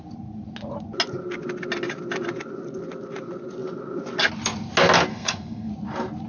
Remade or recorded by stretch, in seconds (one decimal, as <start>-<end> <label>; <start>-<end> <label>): 0.0-5.1 recorded; 5.1-5.7 remade; 5.7-6.3 recorded